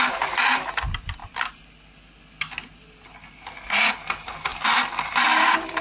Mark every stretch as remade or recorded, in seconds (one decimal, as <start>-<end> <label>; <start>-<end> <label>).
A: 0.0-5.8 recorded